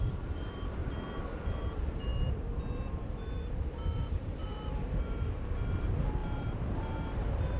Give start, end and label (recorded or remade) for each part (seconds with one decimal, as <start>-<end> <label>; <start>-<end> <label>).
0.0-0.8 remade; 0.8-1.6 recorded; 1.6-2.1 remade; 2.1-2.9 recorded; 2.9-7.6 remade